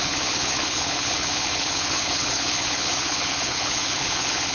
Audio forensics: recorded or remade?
remade